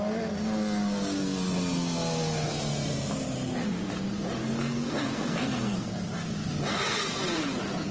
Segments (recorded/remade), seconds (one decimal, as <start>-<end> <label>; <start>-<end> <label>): 0.0-4.4 recorded; 4.4-5.9 remade; 5.9-6.7 recorded; 6.7-7.2 remade; 7.2-7.9 recorded